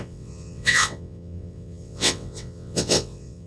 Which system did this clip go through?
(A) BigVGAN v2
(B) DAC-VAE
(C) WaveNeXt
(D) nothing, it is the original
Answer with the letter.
C